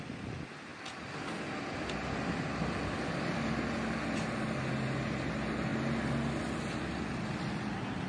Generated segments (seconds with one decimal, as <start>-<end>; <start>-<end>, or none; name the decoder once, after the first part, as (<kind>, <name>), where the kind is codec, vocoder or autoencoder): none